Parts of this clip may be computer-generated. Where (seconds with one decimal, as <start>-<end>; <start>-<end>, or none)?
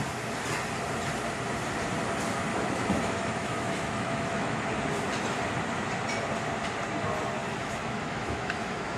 2.5-4.6; 7.4-9.0